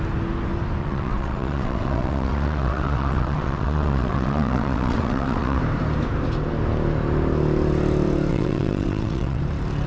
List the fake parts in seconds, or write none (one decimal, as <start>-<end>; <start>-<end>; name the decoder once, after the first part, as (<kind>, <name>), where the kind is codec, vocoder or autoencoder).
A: 0.8-5.6 (vocoder, WaveNeXt); 8.3-9.4